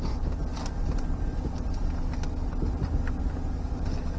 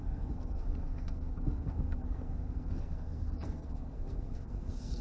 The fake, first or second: second